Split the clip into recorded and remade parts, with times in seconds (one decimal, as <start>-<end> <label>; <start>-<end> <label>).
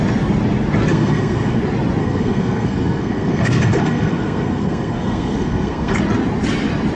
0.0-0.9 recorded; 0.9-1.6 remade; 1.6-2.0 recorded; 2.0-6.0 remade; 6.0-7.0 recorded